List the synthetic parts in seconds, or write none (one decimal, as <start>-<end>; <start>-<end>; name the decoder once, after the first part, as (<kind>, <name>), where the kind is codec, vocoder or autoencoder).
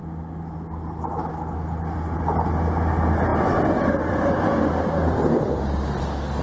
3.3-6.0 (vocoder, BigVGAN v2)